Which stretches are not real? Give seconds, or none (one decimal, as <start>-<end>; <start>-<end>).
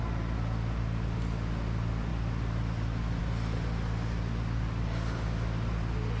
none